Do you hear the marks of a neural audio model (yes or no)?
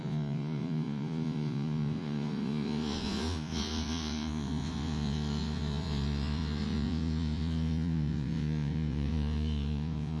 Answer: yes